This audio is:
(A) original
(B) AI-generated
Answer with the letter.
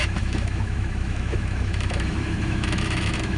B